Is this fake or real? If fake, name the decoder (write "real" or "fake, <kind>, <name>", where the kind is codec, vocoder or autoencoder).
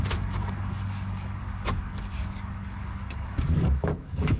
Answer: fake, codec, DAC